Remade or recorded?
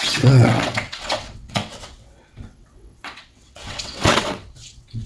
remade